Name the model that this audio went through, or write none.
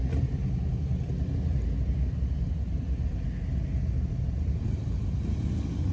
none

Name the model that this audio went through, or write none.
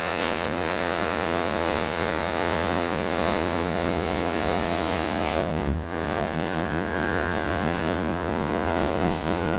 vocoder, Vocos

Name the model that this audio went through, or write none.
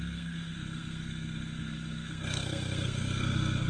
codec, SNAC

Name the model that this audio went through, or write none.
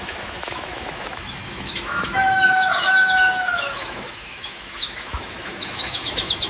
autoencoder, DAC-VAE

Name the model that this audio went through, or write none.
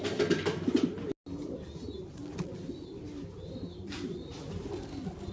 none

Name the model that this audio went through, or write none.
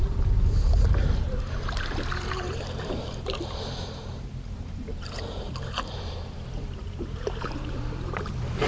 vocoder, BigVGAN v2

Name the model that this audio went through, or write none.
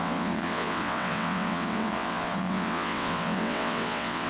vocoder, WaveNeXt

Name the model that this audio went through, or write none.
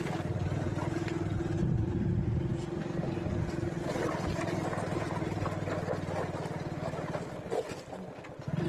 none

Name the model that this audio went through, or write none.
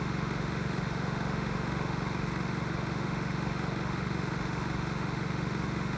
autoencoder, DAC-VAE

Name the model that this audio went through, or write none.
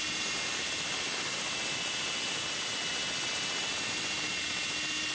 none